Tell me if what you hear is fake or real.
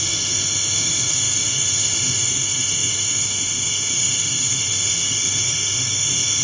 fake